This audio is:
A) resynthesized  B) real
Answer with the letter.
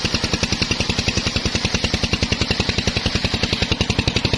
B